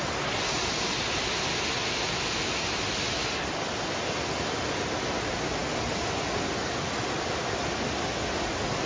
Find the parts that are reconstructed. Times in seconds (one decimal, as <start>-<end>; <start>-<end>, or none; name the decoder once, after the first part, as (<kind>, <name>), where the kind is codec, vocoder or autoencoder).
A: none